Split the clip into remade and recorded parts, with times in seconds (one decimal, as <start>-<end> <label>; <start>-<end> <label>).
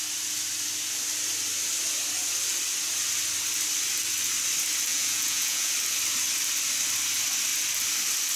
0.0-4.9 recorded; 4.9-5.7 remade; 5.7-8.4 recorded